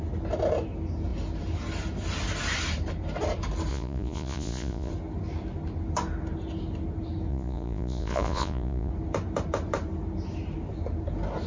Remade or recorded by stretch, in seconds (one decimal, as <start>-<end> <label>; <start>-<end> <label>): 0.0-3.7 recorded; 3.7-4.9 remade; 4.9-7.3 recorded; 7.3-8.9 remade; 8.9-11.5 recorded